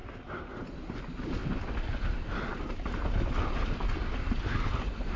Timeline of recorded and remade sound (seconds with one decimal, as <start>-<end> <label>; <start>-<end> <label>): 0.0-1.0 remade; 1.0-5.2 recorded